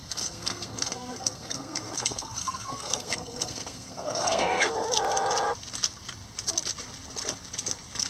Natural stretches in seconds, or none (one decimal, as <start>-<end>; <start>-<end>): 4.7-8.1

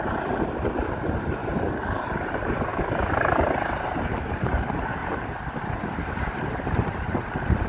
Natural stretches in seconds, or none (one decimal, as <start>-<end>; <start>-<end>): 0.0-7.7